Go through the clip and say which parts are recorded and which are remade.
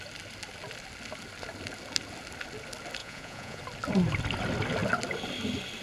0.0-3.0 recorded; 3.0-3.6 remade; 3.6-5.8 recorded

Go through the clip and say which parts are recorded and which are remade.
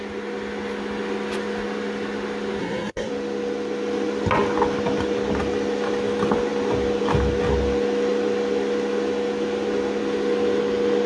0.0-2.6 recorded; 2.6-3.1 remade; 3.1-11.1 recorded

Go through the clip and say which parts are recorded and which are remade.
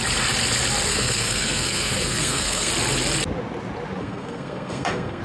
0.0-0.9 recorded; 0.9-2.7 remade; 2.7-4.0 recorded; 4.0-5.2 remade